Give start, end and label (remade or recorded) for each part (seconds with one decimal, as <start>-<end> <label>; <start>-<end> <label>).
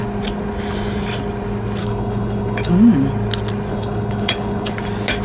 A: 0.0-1.8 recorded; 1.8-2.7 remade; 2.7-3.7 recorded; 3.7-4.7 remade; 4.7-5.2 recorded